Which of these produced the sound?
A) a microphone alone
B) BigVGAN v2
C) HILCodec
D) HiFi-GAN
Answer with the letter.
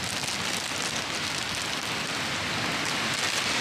A